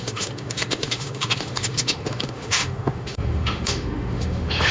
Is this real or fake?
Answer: fake